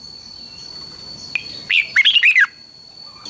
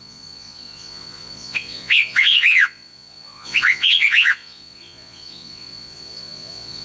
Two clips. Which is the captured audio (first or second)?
first